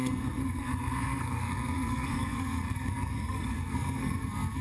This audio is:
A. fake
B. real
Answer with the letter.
A